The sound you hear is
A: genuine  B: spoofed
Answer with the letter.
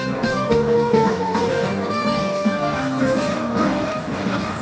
B